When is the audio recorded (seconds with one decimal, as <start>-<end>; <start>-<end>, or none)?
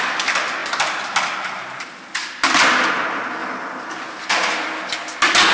0.0-5.5